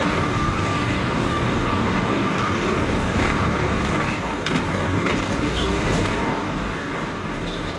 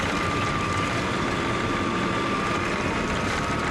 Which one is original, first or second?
second